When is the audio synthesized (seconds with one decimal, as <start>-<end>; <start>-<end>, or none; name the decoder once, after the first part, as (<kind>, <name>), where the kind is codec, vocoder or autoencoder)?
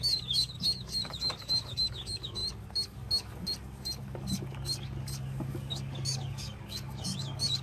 0.0-7.6 (codec, DAC)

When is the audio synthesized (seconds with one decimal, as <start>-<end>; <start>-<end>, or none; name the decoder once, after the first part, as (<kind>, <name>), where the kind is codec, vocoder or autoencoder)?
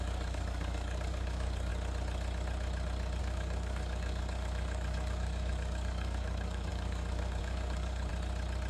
0.0-1.7 (codec, DAC); 3.2-8.1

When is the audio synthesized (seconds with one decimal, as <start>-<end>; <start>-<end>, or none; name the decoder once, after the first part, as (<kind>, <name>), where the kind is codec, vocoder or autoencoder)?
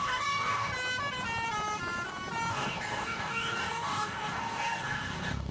0.0-0.7 (codec, DAC); 2.5-5.5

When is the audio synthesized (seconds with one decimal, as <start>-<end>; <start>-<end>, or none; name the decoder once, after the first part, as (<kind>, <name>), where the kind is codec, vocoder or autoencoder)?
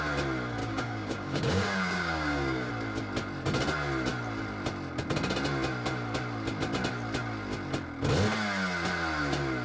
0.6-2.7 (codec, DAC)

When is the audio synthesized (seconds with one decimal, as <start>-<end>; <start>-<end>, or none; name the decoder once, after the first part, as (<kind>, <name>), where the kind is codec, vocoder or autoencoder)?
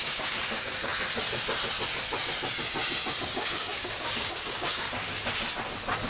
0.0-0.9 (codec, DAC); 3.3-5.1